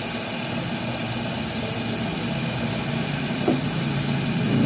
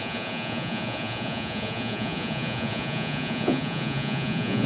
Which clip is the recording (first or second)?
first